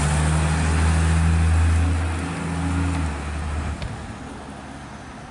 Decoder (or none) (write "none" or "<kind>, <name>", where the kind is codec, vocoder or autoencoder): none